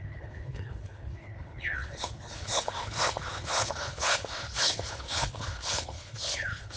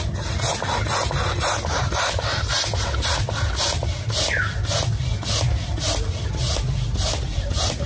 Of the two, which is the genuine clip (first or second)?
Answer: second